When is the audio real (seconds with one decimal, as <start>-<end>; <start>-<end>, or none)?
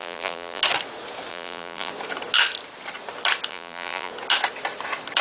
0.6-1.3; 1.9-3.5; 4.1-5.2